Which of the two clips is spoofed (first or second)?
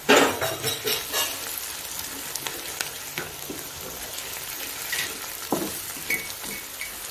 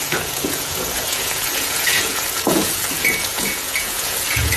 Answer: second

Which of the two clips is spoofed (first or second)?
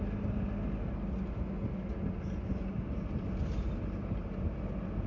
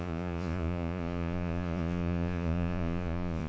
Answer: second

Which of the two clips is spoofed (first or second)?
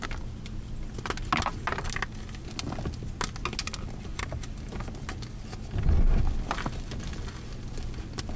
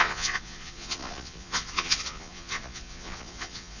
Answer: second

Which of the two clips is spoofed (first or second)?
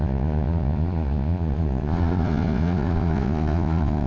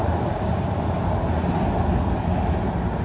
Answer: first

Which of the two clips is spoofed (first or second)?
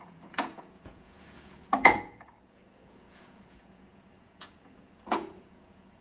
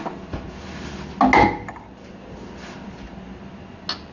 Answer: first